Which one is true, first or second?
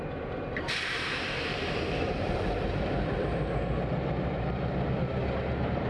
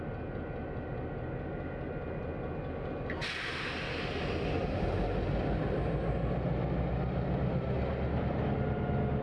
second